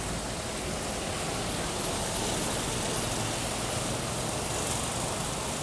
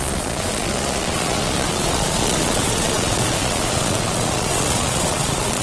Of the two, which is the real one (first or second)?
first